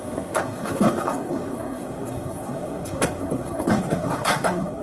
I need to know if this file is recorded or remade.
remade